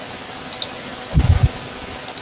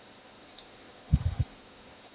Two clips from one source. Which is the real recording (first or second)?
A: first